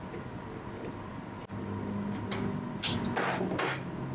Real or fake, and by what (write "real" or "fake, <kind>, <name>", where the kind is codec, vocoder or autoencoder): real